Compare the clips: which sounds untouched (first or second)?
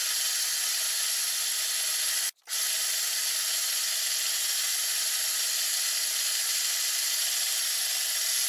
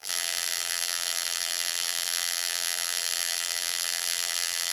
first